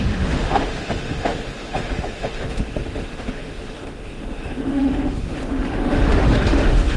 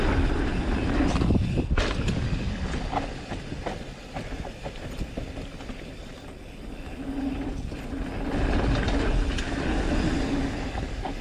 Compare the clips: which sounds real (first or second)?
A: second